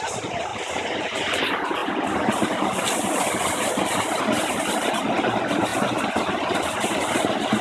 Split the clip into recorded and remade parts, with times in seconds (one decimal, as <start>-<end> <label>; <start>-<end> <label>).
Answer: 0.0-0.5 recorded; 0.5-1.4 remade; 1.4-1.8 recorded; 1.8-4.2 remade; 4.2-7.6 recorded